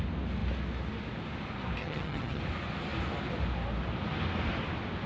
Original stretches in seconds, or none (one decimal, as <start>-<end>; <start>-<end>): 0.0-1.8; 2.4-5.1